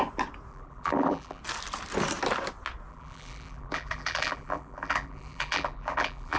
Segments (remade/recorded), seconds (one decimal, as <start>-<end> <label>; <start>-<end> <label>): 0.0-0.5 recorded; 0.5-1.4 remade; 1.4-2.9 recorded; 2.9-6.4 remade